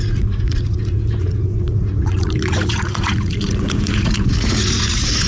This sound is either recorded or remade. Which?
remade